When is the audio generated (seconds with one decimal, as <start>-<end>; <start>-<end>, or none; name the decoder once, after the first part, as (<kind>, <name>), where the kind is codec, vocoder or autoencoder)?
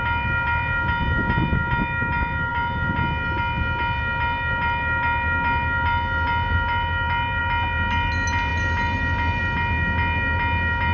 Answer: none